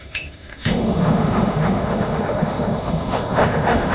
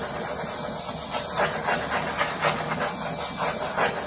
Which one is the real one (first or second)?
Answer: second